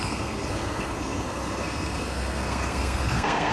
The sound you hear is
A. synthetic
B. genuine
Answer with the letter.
A